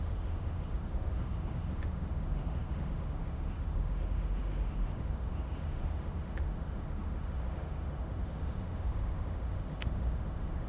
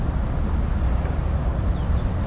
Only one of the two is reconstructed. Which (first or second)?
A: first